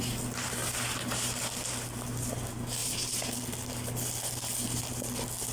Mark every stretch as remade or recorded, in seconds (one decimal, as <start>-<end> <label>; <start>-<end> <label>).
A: 0.0-0.6 recorded; 0.6-2.1 remade; 2.1-2.8 recorded; 2.8-4.9 remade; 4.9-5.5 recorded